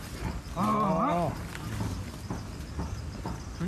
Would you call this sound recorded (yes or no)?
yes